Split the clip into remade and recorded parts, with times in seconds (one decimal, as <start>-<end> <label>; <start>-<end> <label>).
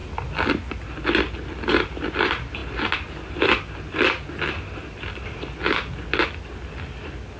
0.0-7.4 recorded